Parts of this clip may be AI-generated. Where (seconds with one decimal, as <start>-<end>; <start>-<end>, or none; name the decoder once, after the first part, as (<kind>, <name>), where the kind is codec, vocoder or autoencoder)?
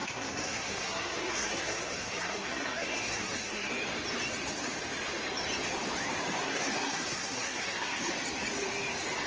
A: 0.0-3.7 (codec, SNAC); 6.4-8.1